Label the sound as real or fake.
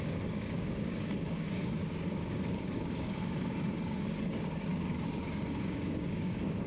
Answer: fake